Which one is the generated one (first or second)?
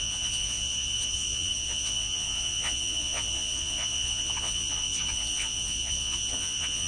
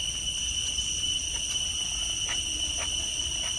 first